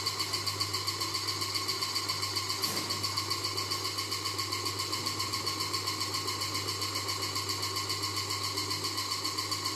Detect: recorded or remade recorded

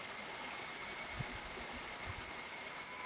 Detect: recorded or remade recorded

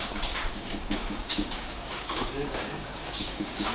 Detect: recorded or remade remade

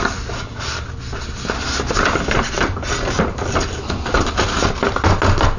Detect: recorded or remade recorded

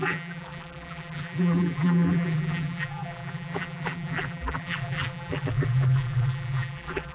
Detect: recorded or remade remade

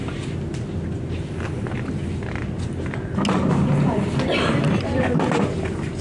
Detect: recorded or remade recorded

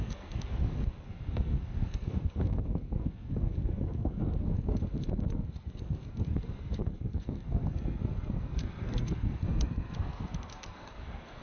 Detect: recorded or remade remade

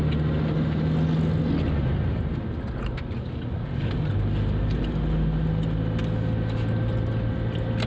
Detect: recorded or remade recorded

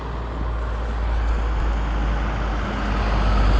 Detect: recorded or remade recorded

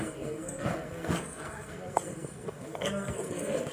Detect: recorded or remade remade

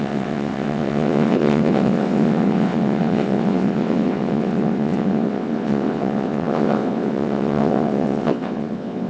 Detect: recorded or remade remade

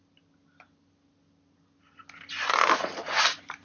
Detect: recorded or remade recorded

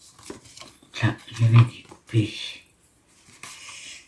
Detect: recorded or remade recorded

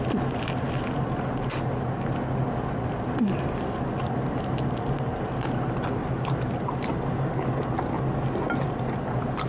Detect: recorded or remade recorded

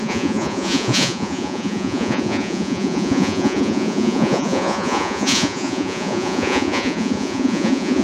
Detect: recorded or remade remade